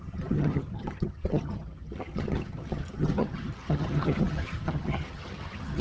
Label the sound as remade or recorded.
remade